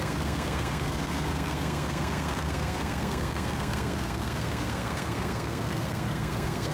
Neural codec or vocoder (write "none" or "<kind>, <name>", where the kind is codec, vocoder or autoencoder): codec, SNAC